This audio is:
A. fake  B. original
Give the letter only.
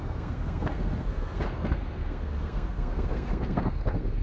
A